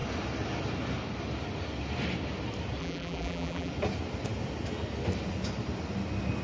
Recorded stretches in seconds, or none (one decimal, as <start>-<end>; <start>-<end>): 0.0-2.8; 3.7-6.4